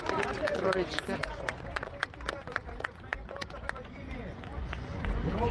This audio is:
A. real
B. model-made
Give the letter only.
B